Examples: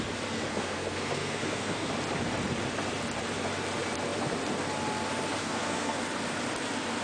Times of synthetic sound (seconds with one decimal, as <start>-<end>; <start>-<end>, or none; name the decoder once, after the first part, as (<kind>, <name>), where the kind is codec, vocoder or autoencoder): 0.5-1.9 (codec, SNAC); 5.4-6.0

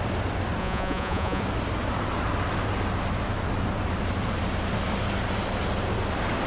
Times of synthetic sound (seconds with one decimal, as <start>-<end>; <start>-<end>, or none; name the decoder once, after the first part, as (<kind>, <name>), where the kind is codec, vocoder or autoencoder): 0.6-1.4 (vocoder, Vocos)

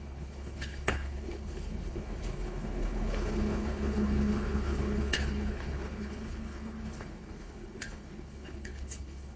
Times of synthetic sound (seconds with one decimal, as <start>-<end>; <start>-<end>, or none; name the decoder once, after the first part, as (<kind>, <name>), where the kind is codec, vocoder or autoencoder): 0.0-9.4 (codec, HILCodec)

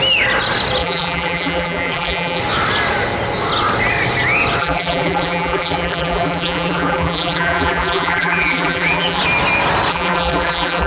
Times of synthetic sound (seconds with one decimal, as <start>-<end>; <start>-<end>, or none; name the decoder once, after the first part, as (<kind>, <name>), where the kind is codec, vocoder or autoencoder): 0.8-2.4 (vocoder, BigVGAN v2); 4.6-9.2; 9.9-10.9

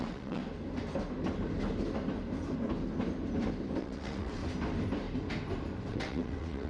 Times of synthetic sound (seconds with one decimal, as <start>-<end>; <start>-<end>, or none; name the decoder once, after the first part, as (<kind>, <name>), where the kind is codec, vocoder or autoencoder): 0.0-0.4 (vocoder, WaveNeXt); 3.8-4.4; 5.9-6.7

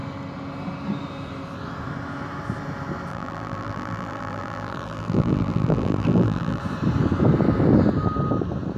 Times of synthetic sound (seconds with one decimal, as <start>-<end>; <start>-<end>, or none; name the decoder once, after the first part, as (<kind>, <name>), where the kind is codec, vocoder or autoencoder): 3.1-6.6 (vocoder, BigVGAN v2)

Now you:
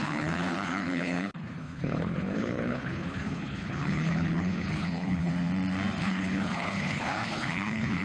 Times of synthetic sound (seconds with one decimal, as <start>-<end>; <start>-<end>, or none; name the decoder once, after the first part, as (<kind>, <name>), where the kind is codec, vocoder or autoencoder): 0.0-5.3 (codec, HILCodec); 6.0-8.0

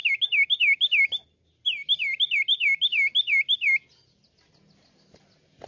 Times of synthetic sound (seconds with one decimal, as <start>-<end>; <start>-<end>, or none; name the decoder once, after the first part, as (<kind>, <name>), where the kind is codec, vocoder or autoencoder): none